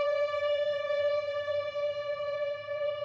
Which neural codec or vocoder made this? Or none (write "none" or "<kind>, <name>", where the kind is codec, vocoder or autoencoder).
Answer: vocoder, Vocos